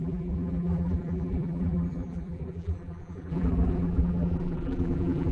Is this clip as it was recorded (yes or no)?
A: no